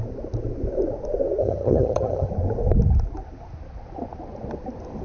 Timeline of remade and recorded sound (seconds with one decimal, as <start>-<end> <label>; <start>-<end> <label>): 0.0-1.4 recorded; 1.4-2.3 remade; 2.3-5.0 recorded